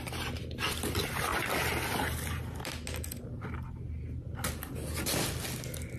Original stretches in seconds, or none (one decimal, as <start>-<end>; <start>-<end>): 0.0-6.0